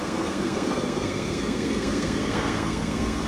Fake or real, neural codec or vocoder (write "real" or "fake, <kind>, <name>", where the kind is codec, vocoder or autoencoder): fake, codec, SNAC